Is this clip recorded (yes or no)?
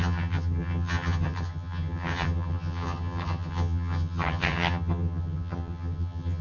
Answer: no